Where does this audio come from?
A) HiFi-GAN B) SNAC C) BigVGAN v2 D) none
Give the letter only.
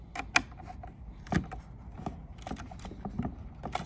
D